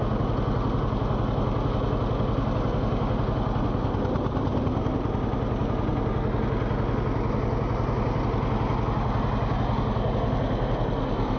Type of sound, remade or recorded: recorded